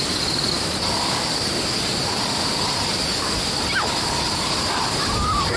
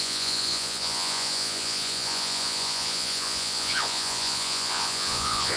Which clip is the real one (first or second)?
first